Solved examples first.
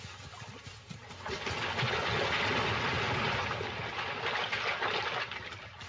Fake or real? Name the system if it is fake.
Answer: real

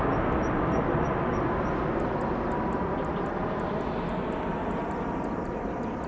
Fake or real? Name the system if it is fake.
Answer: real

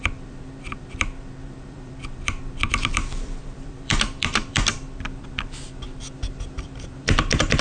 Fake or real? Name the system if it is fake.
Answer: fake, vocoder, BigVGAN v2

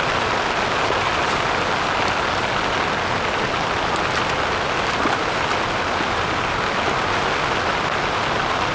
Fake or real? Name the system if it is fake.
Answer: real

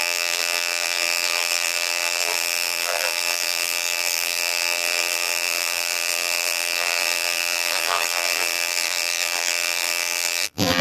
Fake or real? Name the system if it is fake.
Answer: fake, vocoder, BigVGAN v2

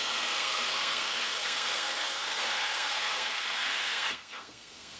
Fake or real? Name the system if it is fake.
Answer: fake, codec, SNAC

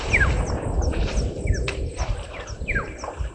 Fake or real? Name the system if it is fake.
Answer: real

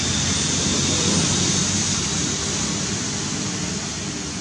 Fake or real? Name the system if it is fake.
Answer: real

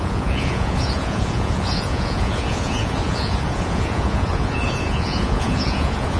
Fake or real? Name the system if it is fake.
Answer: fake, vocoder, Vocos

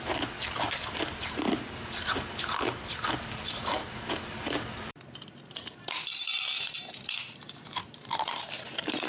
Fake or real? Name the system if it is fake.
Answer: fake, vocoder, BigVGAN v2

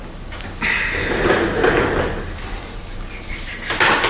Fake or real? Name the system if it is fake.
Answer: real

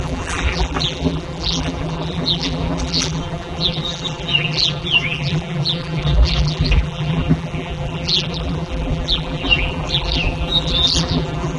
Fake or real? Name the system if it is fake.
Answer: fake, vocoder, BigVGAN v2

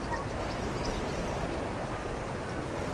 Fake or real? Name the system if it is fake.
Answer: real